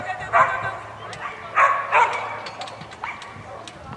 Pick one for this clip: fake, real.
real